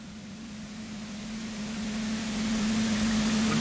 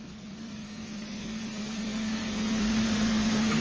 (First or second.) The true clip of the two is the first